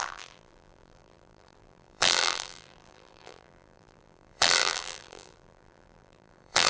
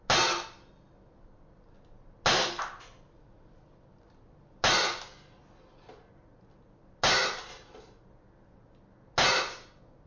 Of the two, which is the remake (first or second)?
first